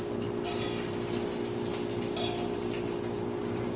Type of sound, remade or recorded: recorded